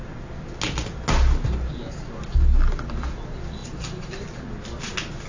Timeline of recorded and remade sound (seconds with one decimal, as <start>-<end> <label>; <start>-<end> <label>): 0.0-3.6 recorded; 3.6-4.1 remade; 4.1-5.3 recorded